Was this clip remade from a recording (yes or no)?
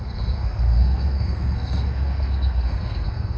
yes